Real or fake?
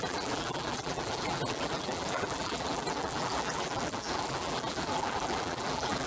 fake